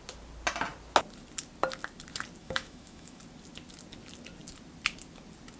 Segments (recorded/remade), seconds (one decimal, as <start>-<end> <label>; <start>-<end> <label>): 0.0-2.4 recorded; 2.4-3.2 remade; 3.2-5.6 recorded